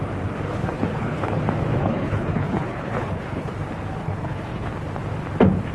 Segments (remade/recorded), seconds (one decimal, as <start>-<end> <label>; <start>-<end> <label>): 0.0-0.5 recorded; 0.5-1.4 remade; 1.4-1.8 recorded; 1.8-3.5 remade; 3.5-4.0 recorded; 4.0-4.7 remade; 4.7-5.7 recorded